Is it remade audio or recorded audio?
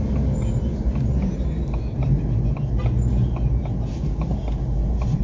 recorded